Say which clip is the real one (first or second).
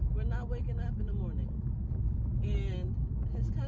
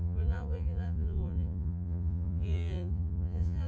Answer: first